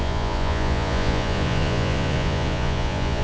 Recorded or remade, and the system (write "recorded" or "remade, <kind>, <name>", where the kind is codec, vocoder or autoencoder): remade, vocoder, Vocos